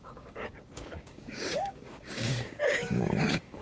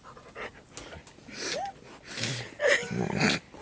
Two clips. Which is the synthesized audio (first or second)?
first